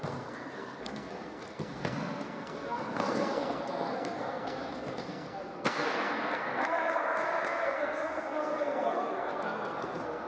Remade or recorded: remade